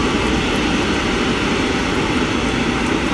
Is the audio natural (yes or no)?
yes